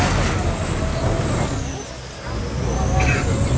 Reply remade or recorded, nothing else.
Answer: recorded